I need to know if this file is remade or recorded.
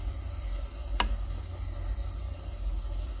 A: recorded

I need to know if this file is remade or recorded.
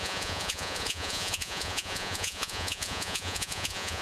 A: remade